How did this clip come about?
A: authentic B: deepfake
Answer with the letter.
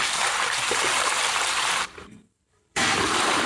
B